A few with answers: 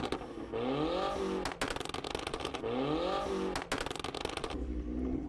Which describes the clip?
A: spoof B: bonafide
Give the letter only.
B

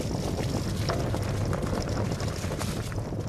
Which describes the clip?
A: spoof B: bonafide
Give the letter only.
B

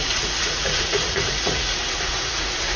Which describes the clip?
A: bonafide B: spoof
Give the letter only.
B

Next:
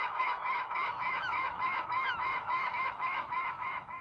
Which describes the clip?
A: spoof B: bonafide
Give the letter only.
A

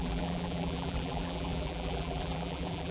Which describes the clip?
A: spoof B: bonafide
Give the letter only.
A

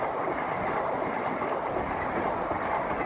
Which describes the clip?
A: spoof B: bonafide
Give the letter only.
B